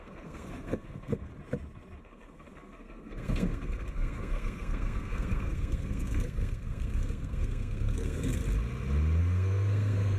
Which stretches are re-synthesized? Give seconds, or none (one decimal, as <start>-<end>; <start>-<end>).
0.0-1.3; 2.0-8.4; 9.2-10.2